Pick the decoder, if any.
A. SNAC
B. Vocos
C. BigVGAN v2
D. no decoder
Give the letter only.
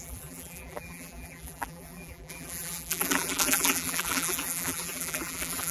C